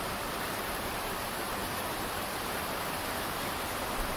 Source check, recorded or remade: remade